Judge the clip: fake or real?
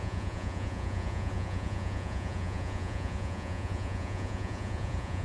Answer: fake